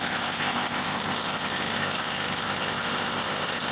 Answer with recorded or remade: remade